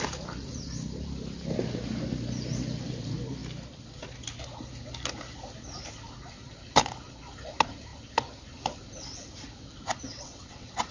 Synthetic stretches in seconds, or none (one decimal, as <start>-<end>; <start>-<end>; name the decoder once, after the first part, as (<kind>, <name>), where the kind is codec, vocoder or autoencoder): 10.1-10.9 (vocoder, WaveNeXt)